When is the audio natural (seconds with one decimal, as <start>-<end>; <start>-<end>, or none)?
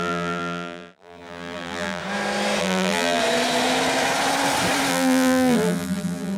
2.0-2.6; 3.2-4.9